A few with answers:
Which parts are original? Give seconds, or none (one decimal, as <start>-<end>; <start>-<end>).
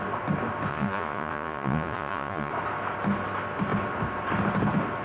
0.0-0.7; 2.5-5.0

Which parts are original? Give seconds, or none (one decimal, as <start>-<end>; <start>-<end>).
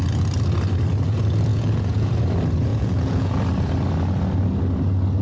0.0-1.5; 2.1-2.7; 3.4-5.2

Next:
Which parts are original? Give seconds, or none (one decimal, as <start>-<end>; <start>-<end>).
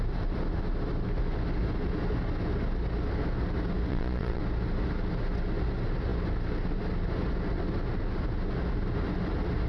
0.0-3.9; 4.4-9.7